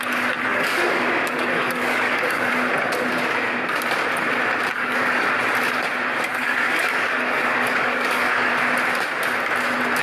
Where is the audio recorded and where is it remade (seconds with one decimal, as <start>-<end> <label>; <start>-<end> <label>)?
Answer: 0.0-0.5 recorded; 0.5-2.5 remade; 2.5-4.7 recorded; 4.7-5.3 remade; 5.3-6.3 recorded; 6.3-8.5 remade; 8.5-10.0 recorded